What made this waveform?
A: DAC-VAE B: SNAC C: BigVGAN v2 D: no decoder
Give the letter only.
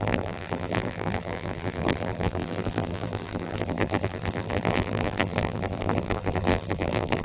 C